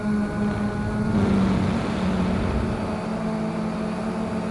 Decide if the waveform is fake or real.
real